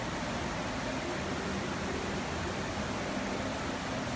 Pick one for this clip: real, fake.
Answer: real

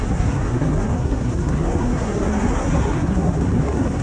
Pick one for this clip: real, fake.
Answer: fake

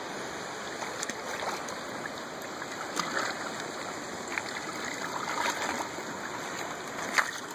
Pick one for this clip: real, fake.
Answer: real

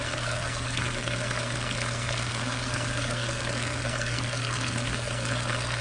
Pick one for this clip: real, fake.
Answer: fake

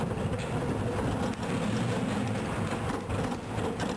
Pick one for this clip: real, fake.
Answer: real